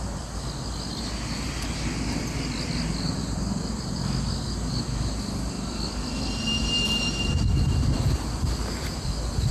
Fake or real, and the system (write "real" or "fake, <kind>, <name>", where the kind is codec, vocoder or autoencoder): real